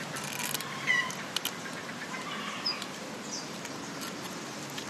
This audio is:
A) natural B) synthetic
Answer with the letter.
A